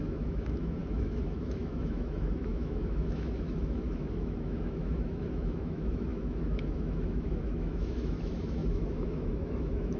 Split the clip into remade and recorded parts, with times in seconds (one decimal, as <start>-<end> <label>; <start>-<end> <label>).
0.0-10.0 remade